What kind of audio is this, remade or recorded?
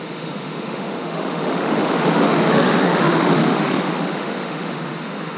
remade